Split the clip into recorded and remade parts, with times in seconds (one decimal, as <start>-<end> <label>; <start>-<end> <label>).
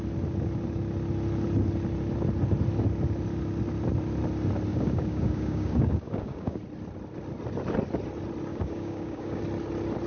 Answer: 0.0-4.7 recorded; 4.7-6.6 remade; 6.6-8.5 recorded; 8.5-9.4 remade; 9.4-10.1 recorded